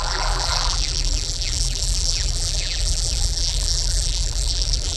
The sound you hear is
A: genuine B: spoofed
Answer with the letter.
B